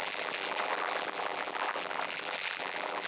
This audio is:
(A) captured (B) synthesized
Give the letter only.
B